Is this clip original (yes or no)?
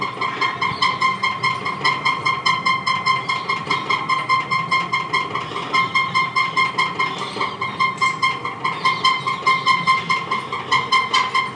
yes